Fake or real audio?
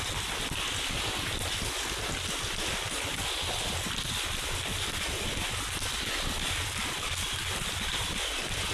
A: real